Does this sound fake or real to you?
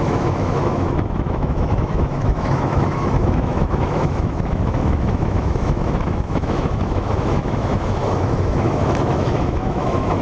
fake